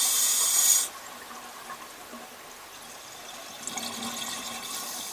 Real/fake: real